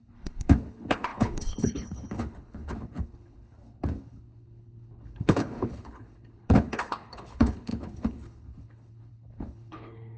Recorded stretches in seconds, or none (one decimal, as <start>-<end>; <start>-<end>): none